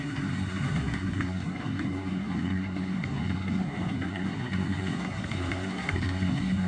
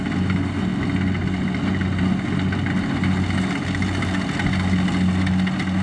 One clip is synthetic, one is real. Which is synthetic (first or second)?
first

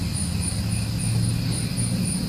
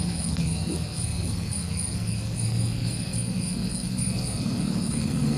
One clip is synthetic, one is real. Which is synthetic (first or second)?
second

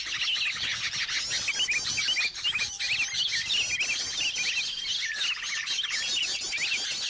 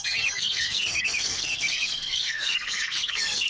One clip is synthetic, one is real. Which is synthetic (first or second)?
second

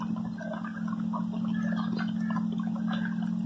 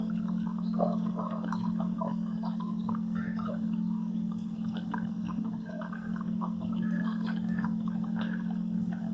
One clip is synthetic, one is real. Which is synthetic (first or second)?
second